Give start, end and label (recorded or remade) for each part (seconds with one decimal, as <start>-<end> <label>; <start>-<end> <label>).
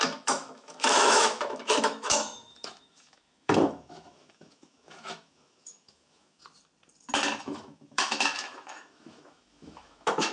0.0-6.4 remade; 6.4-7.4 recorded; 7.4-10.3 remade